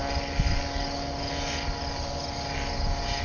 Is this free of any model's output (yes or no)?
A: yes